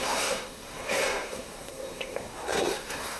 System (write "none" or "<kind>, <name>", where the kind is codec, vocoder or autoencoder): codec, SNAC